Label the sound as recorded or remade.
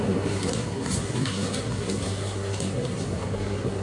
remade